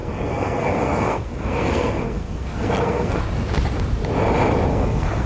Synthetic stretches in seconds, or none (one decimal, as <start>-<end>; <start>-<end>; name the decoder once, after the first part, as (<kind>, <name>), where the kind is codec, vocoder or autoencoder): 0.0-3.2 (codec, SNAC); 4.7-5.3